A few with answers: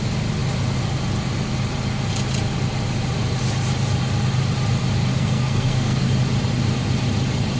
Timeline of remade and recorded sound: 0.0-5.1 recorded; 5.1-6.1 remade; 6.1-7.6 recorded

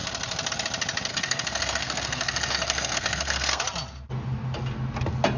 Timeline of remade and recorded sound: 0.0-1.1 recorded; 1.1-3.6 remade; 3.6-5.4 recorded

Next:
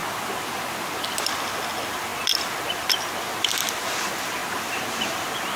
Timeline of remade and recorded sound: 0.0-5.6 recorded

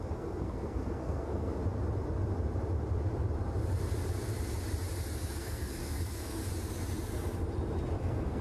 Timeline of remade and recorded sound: 0.0-1.6 remade; 1.6-5.4 recorded; 5.4-6.4 remade; 6.4-8.0 recorded; 8.0-8.4 remade

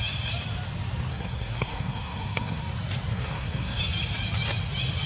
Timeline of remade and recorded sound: 0.0-1.1 recorded; 1.1-2.6 remade; 2.6-3.1 recorded; 3.1-3.8 remade; 3.8-5.1 recorded

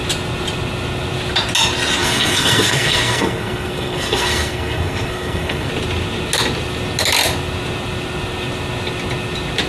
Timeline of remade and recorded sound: 0.0-2.0 recorded; 2.0-5.7 remade; 5.7-9.7 recorded